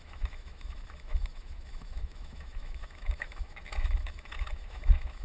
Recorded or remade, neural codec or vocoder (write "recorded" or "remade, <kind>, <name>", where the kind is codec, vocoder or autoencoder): remade, autoencoder, DAC-VAE